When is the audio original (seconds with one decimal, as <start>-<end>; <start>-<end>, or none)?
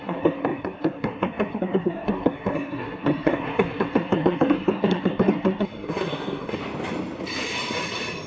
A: 6.6-8.3